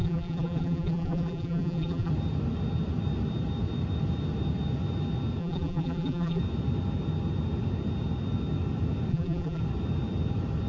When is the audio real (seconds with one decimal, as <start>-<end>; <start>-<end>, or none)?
2.1-5.4; 6.4-9.1; 9.6-10.7